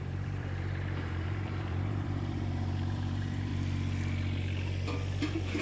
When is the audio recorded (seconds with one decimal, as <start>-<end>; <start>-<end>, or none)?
3.5-5.6